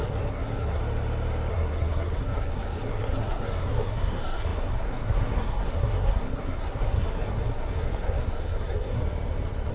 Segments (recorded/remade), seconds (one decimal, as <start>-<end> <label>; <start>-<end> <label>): 0.0-0.8 remade; 0.8-1.5 recorded; 1.5-9.0 remade; 9.0-9.7 recorded